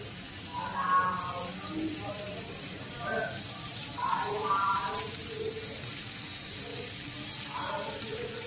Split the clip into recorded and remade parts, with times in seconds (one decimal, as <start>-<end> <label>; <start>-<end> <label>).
0.0-0.5 remade; 0.5-2.1 recorded; 2.1-6.7 remade; 6.7-7.6 recorded; 7.6-8.5 remade